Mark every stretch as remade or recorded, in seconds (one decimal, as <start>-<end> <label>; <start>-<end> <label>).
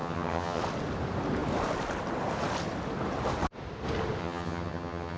0.0-0.6 remade; 0.6-4.2 recorded; 4.2-5.2 remade